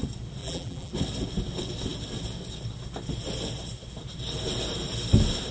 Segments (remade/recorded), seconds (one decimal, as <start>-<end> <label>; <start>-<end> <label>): 0.0-0.4 recorded; 0.4-0.9 remade; 0.9-5.5 recorded